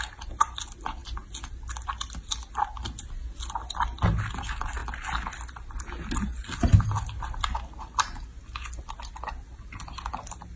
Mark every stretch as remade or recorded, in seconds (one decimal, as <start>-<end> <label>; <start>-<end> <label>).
0.0-10.6 recorded